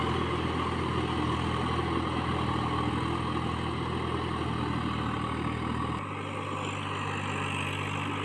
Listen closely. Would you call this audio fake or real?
real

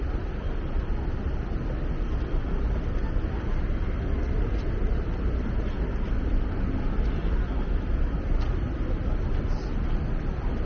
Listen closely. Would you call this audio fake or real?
real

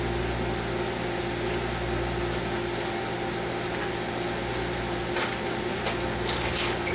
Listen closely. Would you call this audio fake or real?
real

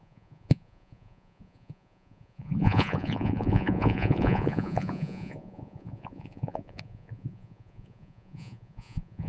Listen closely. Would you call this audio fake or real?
fake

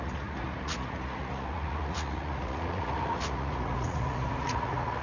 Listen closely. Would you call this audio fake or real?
fake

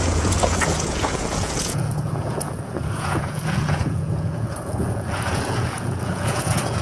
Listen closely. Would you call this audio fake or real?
fake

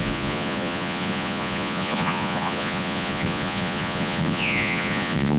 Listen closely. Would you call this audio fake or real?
fake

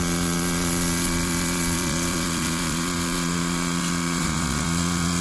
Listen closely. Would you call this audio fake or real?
fake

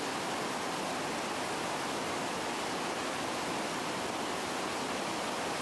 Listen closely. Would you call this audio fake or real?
real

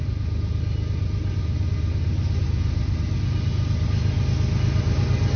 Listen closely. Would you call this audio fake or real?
real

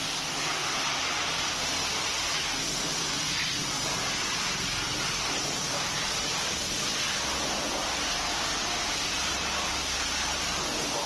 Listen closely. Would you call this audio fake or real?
real